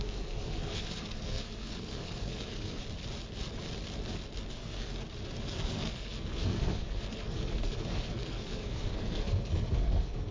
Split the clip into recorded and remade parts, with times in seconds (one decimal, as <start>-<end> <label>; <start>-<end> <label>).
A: 0.0-2.8 remade; 2.8-4.5 recorded; 4.5-4.9 remade; 4.9-5.4 recorded; 5.4-10.3 remade